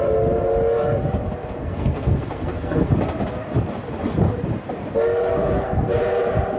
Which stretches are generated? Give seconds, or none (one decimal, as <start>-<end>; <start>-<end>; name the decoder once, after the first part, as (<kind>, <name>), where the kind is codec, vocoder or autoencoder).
1.6-2.9 (codec, SNAC); 5.3-6.0